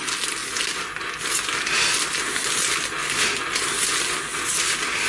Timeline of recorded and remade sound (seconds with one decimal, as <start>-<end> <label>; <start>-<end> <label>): 0.0-5.1 recorded